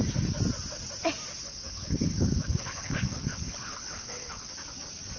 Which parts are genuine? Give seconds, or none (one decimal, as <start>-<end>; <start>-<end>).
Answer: 0.0-1.4; 4.5-5.2